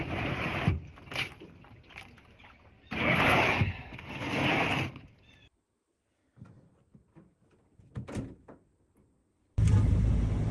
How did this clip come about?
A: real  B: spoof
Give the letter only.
A